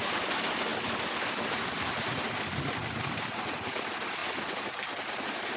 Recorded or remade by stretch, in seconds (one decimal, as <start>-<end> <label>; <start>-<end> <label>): 0.0-5.6 recorded